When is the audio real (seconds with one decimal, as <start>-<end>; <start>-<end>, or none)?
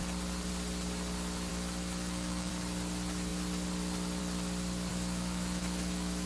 0.0-1.5; 2.5-4.9